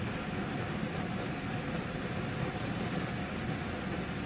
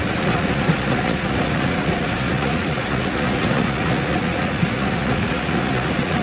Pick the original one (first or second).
first